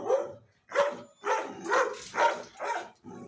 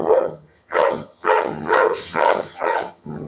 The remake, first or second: second